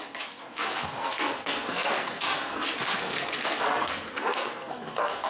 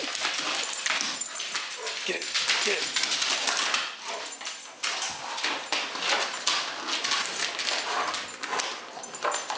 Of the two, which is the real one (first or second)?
second